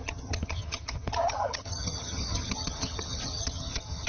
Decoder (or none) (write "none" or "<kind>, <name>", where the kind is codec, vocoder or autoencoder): vocoder, HiFi-GAN